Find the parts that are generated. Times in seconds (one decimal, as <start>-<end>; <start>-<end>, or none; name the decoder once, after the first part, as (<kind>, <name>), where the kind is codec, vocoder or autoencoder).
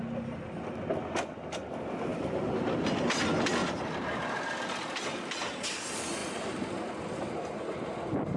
2.1-3.0 (vocoder, BigVGAN v2); 3.6-4.6